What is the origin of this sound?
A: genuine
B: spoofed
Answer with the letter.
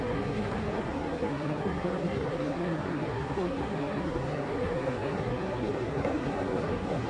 B